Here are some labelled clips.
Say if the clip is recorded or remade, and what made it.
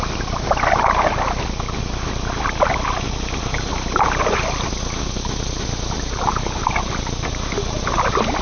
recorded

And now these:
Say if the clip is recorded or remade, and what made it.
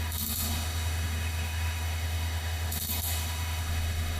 remade, autoencoder, DAC-VAE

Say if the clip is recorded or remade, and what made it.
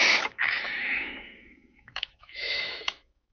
remade, autoencoder, DAC-VAE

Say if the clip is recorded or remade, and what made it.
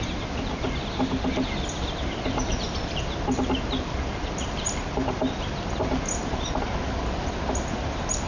recorded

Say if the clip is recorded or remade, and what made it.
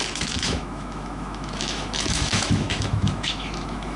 remade, autoencoder, DAC-VAE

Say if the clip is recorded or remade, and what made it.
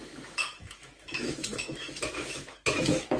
remade, autoencoder, DAC-VAE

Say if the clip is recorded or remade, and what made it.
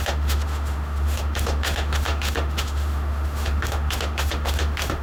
remade, autoencoder, DAC-VAE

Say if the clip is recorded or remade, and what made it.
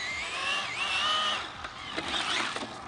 recorded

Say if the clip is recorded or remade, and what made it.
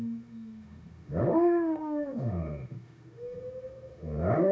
remade, autoencoder, DAC-VAE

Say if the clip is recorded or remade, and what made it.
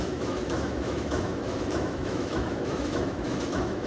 remade, autoencoder, DAC-VAE